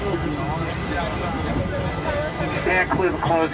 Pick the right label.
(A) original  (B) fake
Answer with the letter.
A